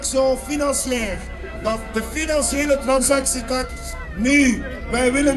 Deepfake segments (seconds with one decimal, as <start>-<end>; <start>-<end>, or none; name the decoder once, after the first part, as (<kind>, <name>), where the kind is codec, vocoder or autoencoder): 0.8-4.0 (codec, SNAC)